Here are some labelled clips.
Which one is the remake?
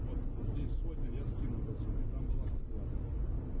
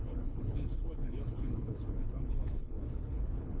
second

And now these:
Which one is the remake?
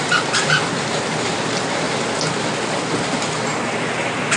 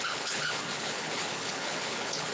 second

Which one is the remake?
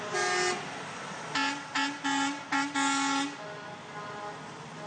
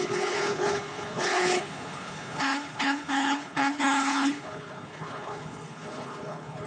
second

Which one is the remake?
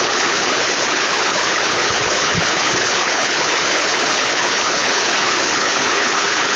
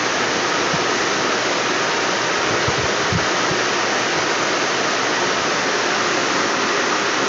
first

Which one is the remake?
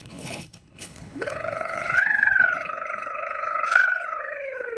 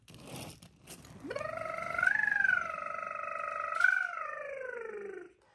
first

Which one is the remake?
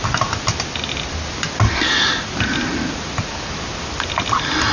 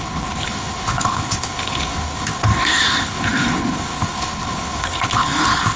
second